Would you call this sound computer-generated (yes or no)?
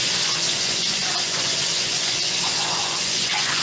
yes